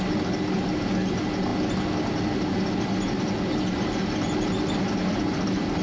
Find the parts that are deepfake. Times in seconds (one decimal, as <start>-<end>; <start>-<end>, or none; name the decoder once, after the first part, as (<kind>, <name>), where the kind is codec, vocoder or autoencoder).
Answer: none

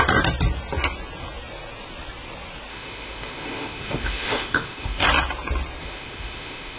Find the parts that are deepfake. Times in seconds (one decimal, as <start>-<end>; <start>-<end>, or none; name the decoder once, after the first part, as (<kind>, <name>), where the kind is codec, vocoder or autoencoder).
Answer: 2.7-5.0 (autoencoder, DAC-VAE); 5.8-6.8